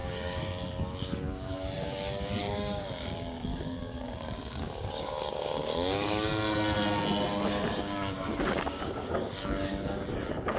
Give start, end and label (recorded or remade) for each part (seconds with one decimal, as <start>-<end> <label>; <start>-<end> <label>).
0.0-6.3 remade; 6.3-7.5 recorded; 7.5-10.6 remade